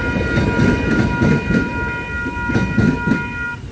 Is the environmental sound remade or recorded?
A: recorded